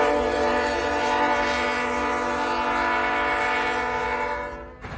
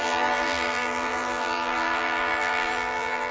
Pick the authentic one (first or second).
first